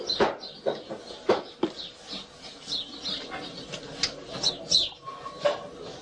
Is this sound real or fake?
real